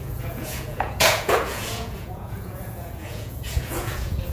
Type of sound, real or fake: fake